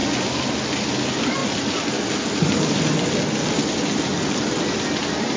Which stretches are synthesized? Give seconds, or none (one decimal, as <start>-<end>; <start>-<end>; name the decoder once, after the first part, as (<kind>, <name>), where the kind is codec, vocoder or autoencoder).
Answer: none